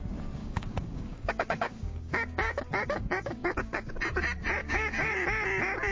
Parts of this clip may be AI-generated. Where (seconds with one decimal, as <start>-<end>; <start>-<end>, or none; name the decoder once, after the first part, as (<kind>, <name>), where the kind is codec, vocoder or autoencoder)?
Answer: 0.4-3.9 (codec, DAC); 4.6-5.1

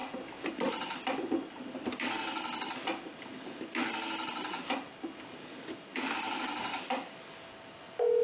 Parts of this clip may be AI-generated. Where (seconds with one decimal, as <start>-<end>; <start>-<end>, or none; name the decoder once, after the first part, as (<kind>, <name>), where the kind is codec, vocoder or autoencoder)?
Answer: none

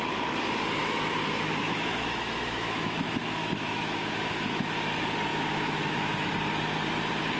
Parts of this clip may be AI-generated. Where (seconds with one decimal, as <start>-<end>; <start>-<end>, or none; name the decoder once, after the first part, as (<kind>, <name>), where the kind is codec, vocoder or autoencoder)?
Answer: 0.8-4.7 (autoencoder, DAC-VAE); 5.3-6.3

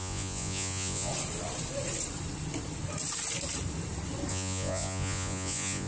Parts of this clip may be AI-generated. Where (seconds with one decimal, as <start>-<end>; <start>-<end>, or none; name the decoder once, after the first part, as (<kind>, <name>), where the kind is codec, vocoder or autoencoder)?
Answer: 0.0-1.1 (vocoder, Vocos); 4.3-5.9

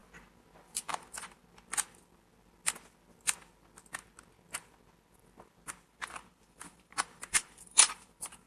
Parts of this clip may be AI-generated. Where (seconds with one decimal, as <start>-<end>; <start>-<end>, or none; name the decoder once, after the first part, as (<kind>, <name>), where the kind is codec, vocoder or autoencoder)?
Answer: 0.9-1.4 (vocoder, BigVGAN v2); 5.9-8.5